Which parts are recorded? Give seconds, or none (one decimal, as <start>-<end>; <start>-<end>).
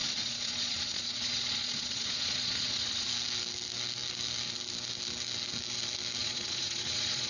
3.1-6.2